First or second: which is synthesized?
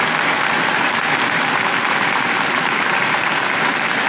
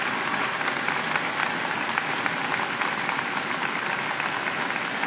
first